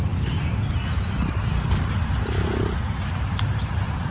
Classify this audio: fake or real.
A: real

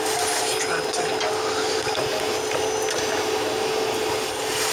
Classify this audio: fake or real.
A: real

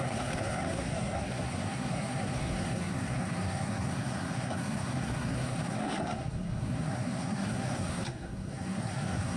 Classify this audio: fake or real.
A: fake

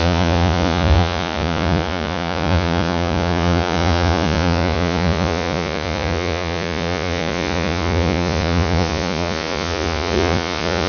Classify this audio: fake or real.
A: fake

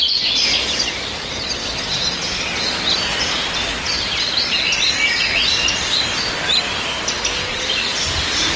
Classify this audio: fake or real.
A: real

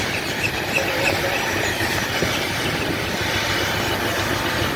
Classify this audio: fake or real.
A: real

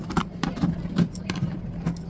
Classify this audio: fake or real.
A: fake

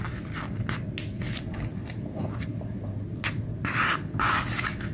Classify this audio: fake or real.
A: real